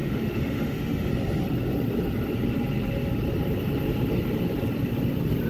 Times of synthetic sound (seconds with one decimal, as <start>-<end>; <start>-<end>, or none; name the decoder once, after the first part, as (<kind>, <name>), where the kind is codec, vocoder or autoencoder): 0.0-1.1 (autoencoder, DAC-VAE)